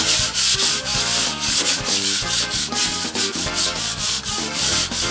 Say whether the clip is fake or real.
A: fake